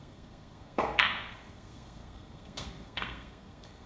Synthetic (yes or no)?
yes